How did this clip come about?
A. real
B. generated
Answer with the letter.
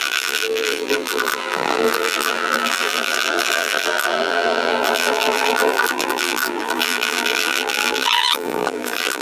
B